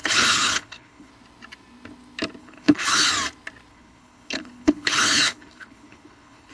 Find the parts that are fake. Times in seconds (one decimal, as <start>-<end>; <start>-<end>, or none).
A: 0.0-1.1; 2.4-3.1; 3.7-6.5